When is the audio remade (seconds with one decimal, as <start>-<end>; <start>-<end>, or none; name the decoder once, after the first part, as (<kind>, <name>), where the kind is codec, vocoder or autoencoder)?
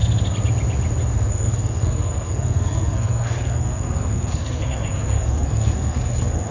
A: 1.3-6.5 (codec, SNAC)